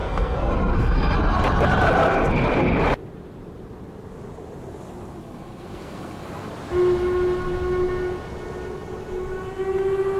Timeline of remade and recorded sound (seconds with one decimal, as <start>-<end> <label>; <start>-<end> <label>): 0.0-0.5 remade; 0.5-5.2 recorded; 5.2-6.5 remade; 6.5-10.2 recorded